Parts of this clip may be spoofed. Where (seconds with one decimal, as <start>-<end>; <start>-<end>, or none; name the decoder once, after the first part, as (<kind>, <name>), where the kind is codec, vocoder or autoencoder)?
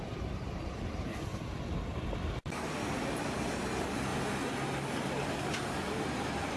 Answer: 1.3-3.6 (vocoder, BigVGAN v2)